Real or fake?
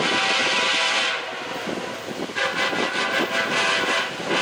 real